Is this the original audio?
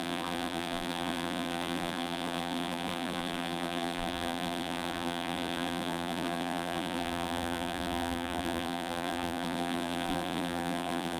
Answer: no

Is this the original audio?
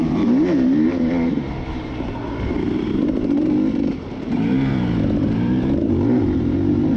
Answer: no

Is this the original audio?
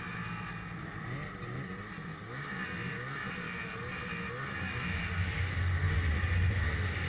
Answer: yes